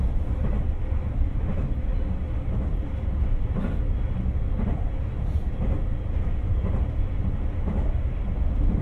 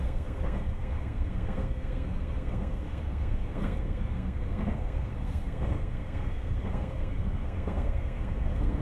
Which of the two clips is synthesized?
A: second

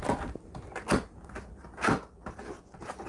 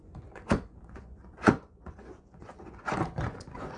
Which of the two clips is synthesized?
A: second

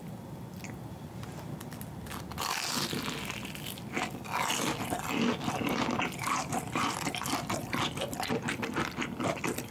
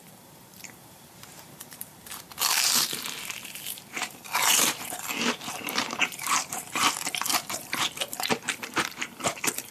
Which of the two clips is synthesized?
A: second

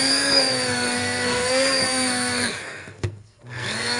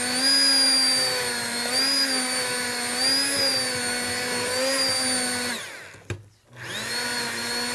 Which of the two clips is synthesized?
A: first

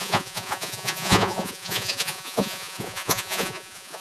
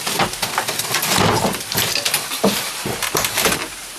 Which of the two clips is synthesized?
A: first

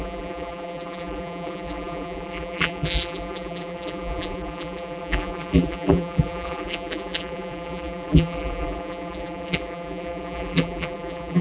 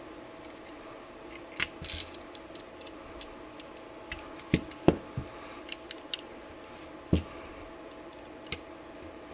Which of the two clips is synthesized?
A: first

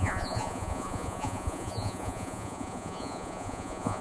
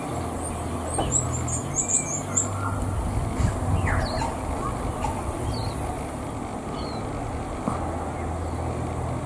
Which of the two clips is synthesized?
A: first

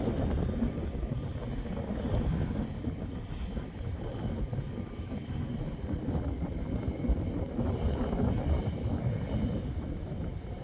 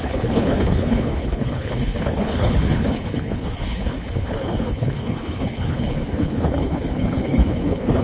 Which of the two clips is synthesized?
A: second